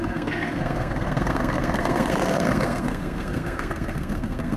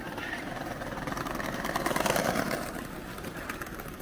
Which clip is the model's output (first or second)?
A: first